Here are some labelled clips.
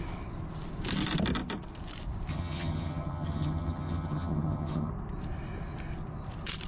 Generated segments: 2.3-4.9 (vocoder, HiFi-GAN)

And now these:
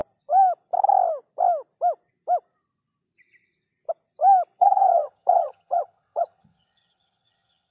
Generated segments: 4.6-7.7 (vocoder, HiFi-GAN)